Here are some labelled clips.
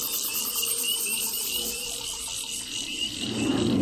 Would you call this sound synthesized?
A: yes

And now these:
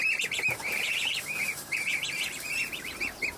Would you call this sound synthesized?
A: yes